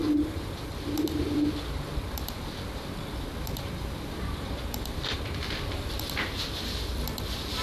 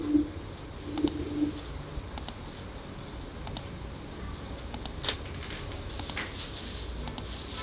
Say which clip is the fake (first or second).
first